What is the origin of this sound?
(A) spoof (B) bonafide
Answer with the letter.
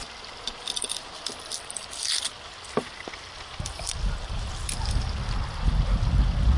B